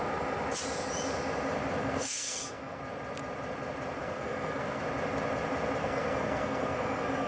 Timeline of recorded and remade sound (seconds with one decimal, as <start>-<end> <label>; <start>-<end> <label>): 0.0-1.8 recorded; 1.8-2.8 remade; 2.8-4.0 recorded; 4.0-4.8 remade; 4.8-5.8 recorded; 5.8-7.3 remade